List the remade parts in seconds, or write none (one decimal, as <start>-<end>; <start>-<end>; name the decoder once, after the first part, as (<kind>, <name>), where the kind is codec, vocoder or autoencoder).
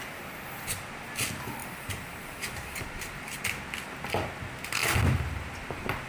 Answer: 1.6-3.4 (vocoder, BigVGAN v2)